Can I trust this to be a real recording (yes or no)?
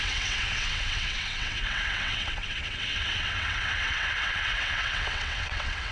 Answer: no